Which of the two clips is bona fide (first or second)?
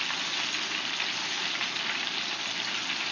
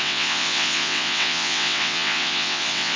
first